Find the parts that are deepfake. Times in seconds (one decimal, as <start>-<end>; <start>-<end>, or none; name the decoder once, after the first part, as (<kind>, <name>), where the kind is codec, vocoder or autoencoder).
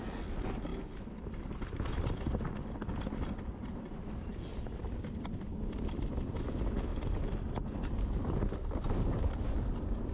3.6-4.8 (vocoder, BigVGAN v2)